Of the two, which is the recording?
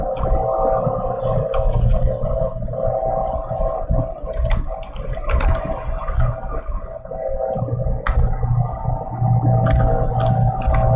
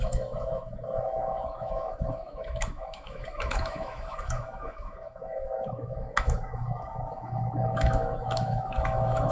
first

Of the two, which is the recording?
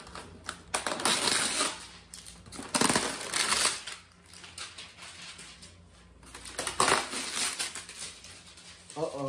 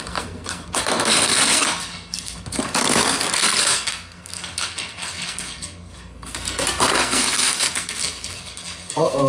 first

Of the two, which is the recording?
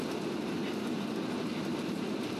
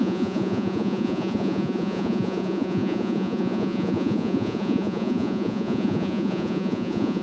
first